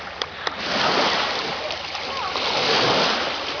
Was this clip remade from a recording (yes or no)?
no